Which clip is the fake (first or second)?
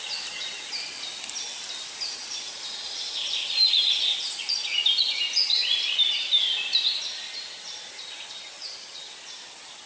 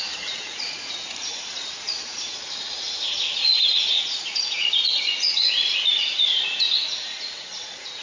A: second